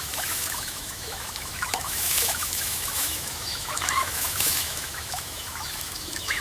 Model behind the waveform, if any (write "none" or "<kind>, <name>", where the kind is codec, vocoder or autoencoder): autoencoder, DAC-VAE